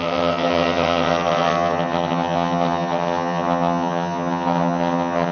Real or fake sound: fake